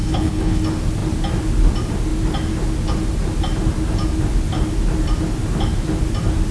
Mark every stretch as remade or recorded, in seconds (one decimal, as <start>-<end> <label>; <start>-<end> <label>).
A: 0.0-0.6 remade; 0.6-6.5 recorded